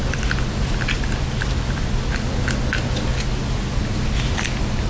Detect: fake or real real